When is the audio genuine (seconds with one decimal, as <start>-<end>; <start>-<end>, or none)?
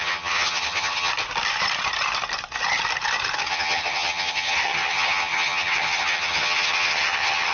1.1-3.5